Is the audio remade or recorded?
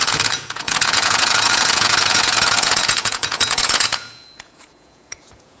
remade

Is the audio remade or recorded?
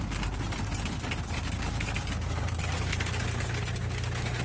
recorded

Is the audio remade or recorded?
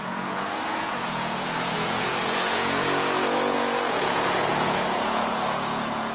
remade